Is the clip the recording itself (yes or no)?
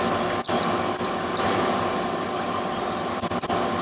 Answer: no